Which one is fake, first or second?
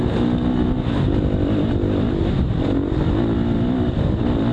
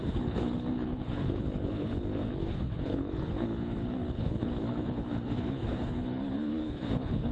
second